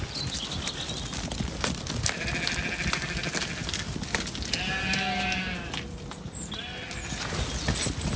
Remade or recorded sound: recorded